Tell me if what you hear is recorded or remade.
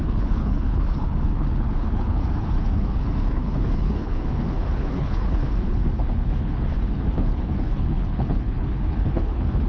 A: remade